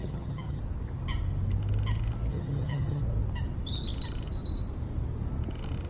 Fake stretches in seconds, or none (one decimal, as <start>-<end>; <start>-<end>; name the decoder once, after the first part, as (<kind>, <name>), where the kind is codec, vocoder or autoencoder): 0.0-0.6 (vocoder, HiFi-GAN); 2.3-3.0